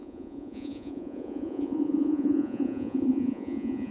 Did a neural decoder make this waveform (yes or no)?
yes